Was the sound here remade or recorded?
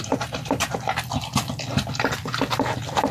recorded